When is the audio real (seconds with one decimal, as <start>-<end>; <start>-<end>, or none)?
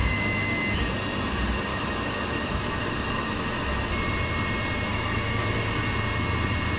0.9-1.7; 3.4-4.9; 5.8-6.8